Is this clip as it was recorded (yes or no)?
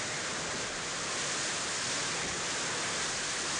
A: yes